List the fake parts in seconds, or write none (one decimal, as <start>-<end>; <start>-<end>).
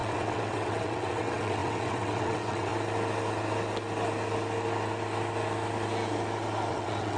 0.0-2.7; 6.7-7.2